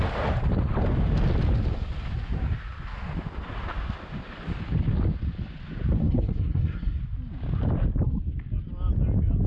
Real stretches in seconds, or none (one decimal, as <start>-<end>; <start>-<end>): 0.0-6.0; 7.0-9.5